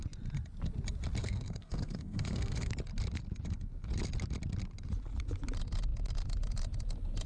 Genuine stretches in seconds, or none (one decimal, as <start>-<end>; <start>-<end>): 0.0-1.2; 2.7-7.3